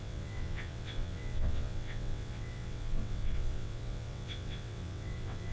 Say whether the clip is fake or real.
fake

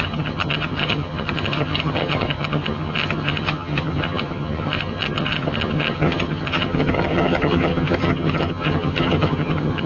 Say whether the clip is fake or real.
fake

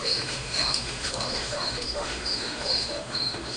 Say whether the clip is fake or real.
fake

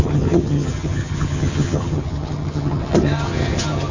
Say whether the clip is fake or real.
fake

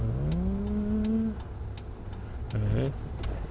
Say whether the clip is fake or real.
real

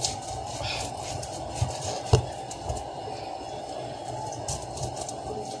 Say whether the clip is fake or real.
real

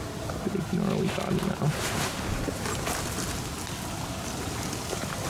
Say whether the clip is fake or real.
real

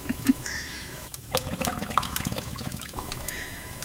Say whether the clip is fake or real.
fake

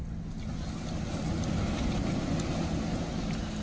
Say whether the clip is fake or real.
real